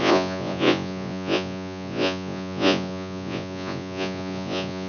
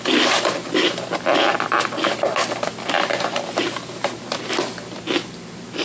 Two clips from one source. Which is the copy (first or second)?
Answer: first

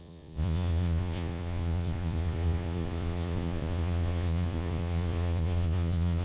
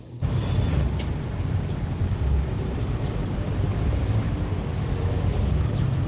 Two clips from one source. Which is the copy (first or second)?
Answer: first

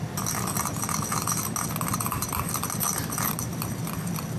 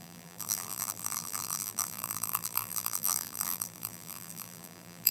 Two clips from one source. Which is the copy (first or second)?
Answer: second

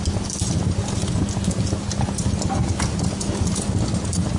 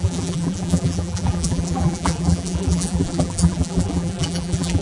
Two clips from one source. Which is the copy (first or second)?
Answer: second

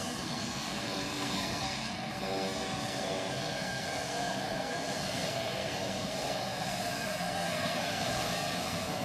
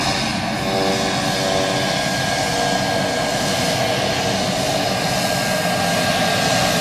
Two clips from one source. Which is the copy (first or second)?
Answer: first